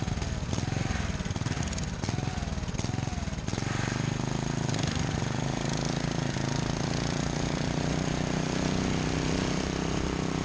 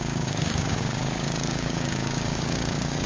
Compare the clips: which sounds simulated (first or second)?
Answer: second